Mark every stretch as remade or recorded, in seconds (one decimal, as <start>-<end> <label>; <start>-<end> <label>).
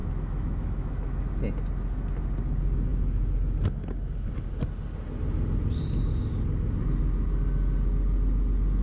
0.0-1.3 remade; 1.3-8.8 recorded